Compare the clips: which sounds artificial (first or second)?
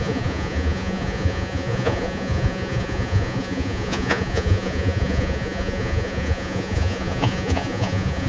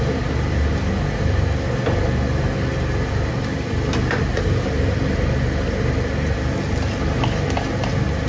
first